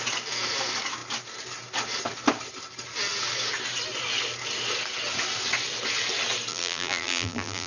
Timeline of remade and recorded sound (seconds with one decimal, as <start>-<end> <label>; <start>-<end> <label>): 0.0-6.5 recorded; 6.5-7.7 remade